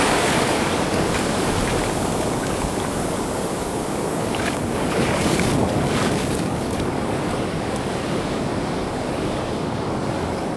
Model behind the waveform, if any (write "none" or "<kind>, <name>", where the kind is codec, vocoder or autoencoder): codec, DAC